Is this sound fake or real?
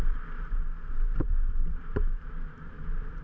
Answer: fake